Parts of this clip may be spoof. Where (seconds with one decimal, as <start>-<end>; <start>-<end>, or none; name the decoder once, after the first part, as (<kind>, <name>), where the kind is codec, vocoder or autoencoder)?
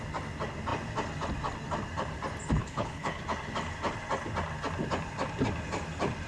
2.6-3.2 (codec, HILCodec)